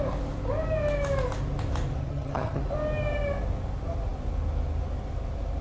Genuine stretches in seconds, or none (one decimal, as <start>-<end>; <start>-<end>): 0.0-2.0; 2.6-5.6